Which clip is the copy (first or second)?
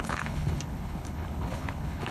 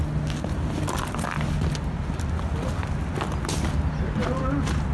first